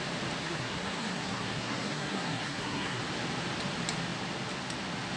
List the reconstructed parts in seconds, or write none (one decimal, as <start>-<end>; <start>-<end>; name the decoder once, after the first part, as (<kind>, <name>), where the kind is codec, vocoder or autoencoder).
0.4-3.0 (codec, SNAC)